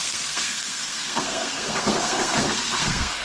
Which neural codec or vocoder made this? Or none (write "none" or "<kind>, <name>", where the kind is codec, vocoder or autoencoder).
codec, SNAC